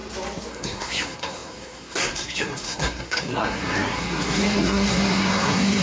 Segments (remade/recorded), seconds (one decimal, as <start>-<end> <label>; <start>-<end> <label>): 0.0-0.5 recorded; 0.5-5.8 remade